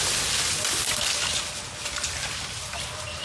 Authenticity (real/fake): real